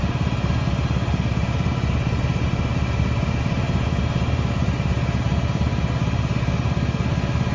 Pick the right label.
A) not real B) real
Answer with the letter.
B